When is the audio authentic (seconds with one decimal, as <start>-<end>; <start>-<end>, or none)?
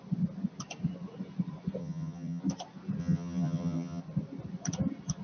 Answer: 0.0-1.8; 2.4-3.0; 4.0-5.2